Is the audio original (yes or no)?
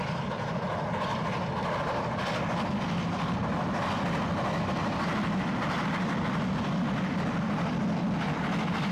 yes